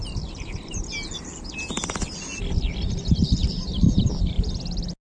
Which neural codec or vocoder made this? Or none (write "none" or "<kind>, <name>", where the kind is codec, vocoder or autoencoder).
none